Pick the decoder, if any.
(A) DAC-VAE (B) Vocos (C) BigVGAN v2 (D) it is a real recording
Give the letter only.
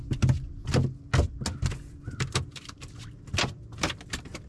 D